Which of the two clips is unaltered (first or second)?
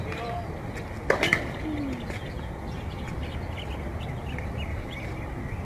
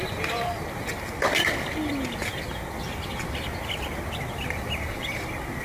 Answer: first